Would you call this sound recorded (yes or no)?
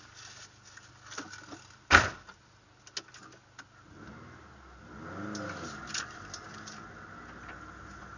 yes